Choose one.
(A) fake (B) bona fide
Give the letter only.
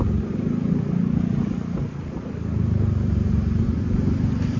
B